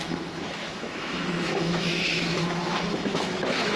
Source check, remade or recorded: remade